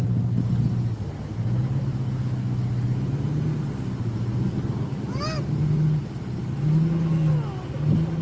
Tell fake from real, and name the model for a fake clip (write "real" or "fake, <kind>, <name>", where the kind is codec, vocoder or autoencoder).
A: real